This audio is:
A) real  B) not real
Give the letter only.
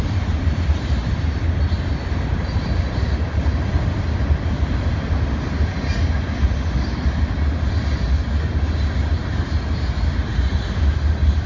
A